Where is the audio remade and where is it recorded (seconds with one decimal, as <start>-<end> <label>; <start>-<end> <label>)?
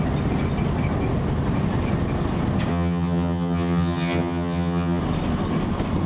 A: 0.0-2.7 recorded; 2.7-5.0 remade; 5.0-6.1 recorded